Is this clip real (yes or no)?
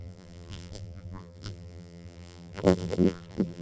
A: no